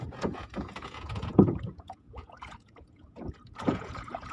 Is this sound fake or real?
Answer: fake